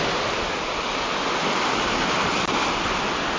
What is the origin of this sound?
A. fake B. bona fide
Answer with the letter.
B